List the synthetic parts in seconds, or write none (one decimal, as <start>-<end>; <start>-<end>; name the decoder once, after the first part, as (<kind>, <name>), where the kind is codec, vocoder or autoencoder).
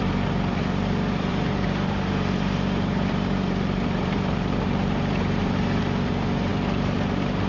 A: 0.0-7.5 (vocoder, BigVGAN v2)